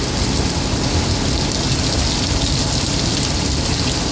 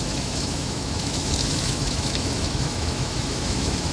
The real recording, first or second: first